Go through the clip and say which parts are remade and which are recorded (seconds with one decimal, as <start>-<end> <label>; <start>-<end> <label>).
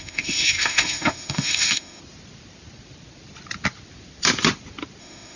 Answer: 0.0-2.0 remade; 2.0-5.0 recorded; 5.0-5.4 remade